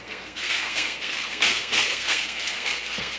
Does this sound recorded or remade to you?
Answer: remade